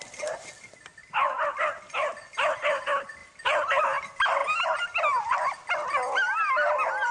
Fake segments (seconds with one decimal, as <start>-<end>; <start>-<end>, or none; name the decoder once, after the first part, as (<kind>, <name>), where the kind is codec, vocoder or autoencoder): none

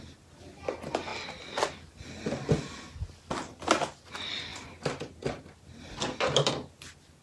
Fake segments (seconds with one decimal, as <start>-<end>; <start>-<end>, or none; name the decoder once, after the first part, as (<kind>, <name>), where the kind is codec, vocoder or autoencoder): none

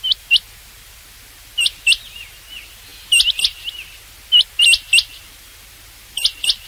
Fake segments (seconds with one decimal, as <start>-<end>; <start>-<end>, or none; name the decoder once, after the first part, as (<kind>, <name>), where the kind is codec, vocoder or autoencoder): none

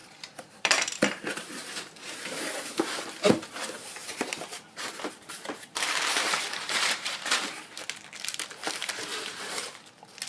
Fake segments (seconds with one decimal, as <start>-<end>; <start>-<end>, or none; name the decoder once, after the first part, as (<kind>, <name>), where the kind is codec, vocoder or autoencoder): 0.0-2.6 (vocoder, BigVGAN v2); 4.0-7.5; 9.1-9.9

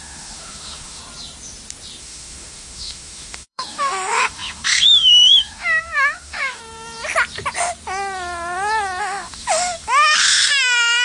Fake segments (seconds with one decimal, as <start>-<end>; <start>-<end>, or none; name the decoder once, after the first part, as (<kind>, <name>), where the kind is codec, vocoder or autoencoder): 0.0-1.0 (autoencoder, DAC-VAE); 2.0-6.6; 9.0-11.0

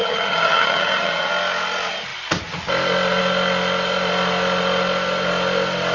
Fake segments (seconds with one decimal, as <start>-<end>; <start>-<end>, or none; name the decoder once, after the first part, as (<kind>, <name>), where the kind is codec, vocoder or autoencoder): 0.0-1.3 (vocoder, HiFi-GAN)

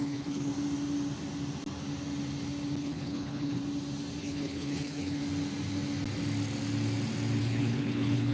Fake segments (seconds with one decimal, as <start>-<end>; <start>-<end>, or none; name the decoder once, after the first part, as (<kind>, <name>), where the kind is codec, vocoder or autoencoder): 0.0-0.5 (codec, HILCodec); 2.8-3.6; 4.2-5.2; 7.4-8.3

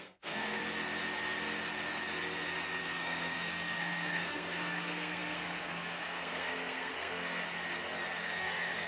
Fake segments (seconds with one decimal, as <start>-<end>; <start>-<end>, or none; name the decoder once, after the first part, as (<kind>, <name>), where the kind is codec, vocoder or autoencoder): 0.0-0.6 (codec, SNAC); 2.8-7.4; 8.2-8.9